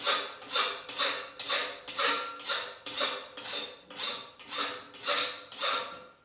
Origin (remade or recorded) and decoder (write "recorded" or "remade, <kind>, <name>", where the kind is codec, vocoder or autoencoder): recorded